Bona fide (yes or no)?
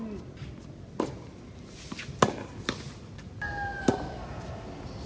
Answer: yes